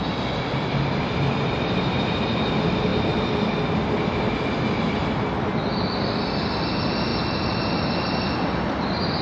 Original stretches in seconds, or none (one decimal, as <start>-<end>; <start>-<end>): 0.0-9.2